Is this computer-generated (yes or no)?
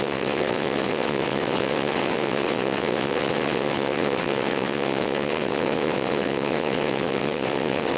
yes